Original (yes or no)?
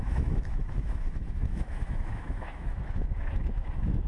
no